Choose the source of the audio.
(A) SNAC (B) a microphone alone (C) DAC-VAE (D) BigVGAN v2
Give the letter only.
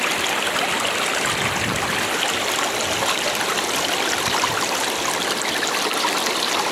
B